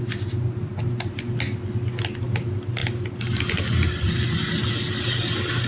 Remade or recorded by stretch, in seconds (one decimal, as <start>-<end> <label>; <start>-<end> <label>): 0.0-5.7 recorded

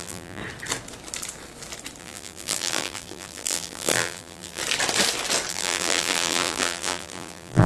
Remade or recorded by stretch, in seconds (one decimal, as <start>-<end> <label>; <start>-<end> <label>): 0.0-0.4 remade; 0.4-2.0 recorded; 2.0-4.6 remade; 4.6-5.5 recorded; 5.5-7.7 remade

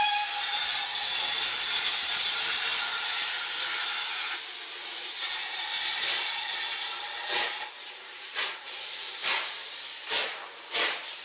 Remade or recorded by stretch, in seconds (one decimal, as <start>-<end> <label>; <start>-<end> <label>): 0.0-2.7 remade; 2.7-4.7 recorded; 4.7-11.2 remade

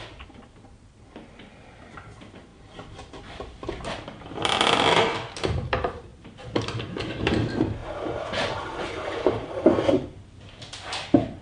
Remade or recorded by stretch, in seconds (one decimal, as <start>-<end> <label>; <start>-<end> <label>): 0.0-11.4 remade

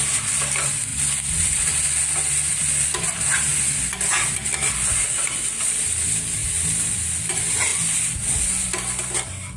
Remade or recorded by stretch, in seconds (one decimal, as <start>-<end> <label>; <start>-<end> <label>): 0.0-0.9 recorded; 0.9-1.9 remade; 1.9-9.6 recorded

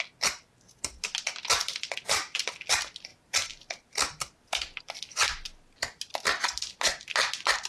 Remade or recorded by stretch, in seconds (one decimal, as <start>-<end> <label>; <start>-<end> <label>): 0.0-1.6 recorded; 1.6-2.5 remade; 2.5-7.7 recorded

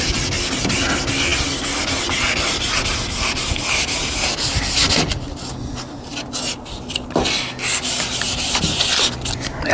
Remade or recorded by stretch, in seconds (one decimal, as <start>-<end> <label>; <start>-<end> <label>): 0.0-9.7 recorded

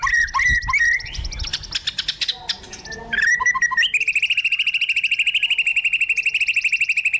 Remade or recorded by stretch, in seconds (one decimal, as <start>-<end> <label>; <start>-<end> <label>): 0.0-7.2 recorded